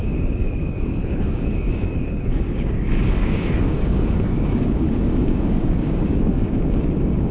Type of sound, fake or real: fake